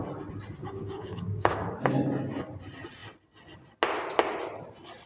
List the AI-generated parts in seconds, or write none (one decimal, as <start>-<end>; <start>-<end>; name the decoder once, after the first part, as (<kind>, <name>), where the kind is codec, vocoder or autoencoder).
0.6-1.7 (codec, DAC)